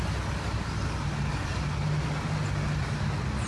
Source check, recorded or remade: recorded